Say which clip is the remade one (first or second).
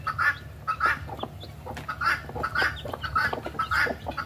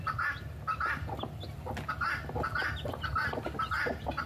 second